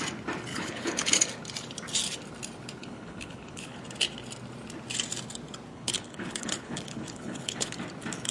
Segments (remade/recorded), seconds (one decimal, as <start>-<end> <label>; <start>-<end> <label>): 0.0-0.5 recorded; 0.5-1.2 remade; 1.2-2.8 recorded; 2.8-3.8 remade; 3.8-5.7 recorded; 5.7-7.7 remade; 7.7-8.3 recorded